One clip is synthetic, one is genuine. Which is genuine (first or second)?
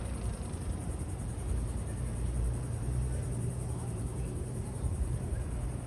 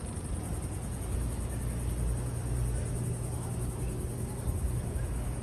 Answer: second